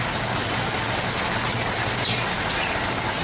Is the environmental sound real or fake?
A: real